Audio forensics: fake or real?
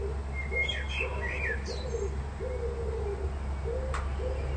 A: real